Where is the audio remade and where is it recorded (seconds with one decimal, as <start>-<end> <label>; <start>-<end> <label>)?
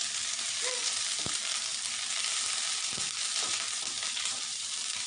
0.0-5.1 remade